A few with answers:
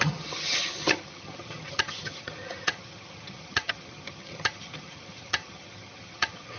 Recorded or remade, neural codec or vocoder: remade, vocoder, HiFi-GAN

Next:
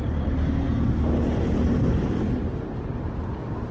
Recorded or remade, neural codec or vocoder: recorded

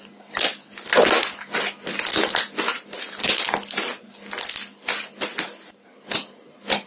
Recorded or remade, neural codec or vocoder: recorded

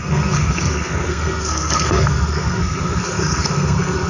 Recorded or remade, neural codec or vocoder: remade, codec, SNAC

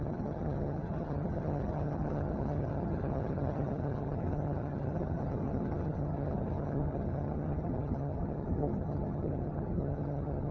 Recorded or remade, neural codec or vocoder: remade, vocoder, HiFi-GAN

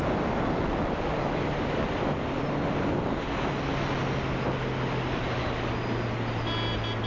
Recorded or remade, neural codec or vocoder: recorded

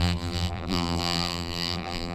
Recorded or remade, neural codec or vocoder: remade, vocoder, BigVGAN v2